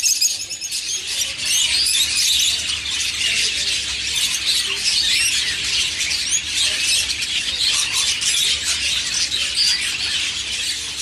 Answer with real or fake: real